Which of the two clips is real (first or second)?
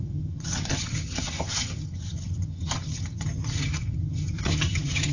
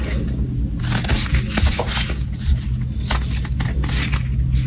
second